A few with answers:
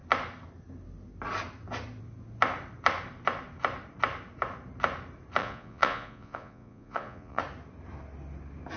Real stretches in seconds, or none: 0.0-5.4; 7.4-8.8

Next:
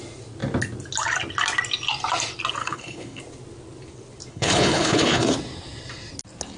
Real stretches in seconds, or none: 0.0-2.6; 3.2-4.3; 5.2-6.6

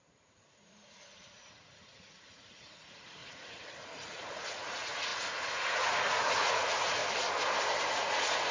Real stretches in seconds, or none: 7.0-7.9